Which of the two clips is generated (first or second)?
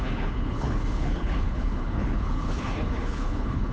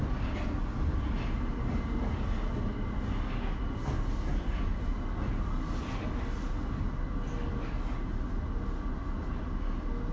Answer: first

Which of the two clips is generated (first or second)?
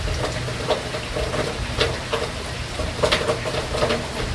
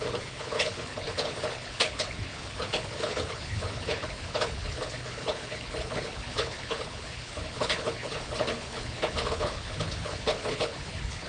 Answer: second